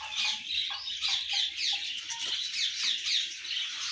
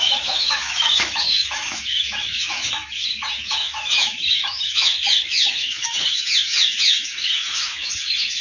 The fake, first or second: second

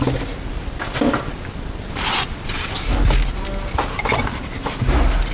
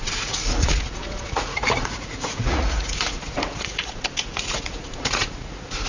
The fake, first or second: second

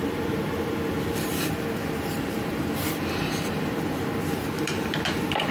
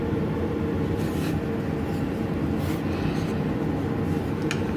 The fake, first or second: first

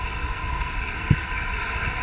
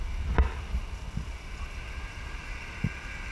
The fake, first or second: first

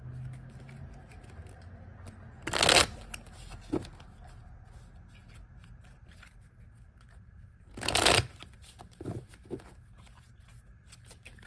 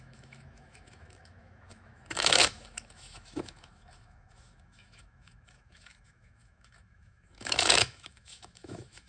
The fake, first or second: second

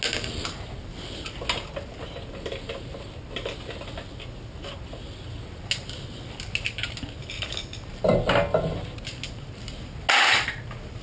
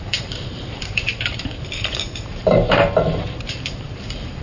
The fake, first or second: second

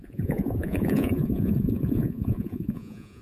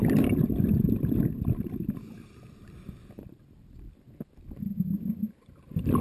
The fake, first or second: first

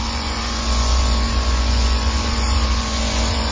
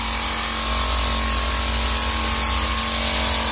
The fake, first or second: first